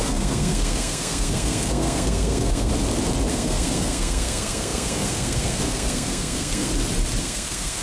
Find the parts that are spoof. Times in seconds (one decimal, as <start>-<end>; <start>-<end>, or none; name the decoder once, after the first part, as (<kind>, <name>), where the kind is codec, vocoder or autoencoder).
0.0-2.7 (codec, SNAC); 3.3-6.7; 7.2-7.8